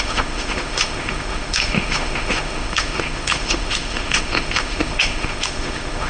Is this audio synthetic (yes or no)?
yes